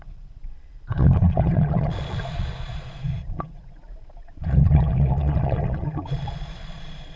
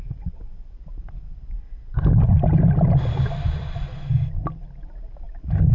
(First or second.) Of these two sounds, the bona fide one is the second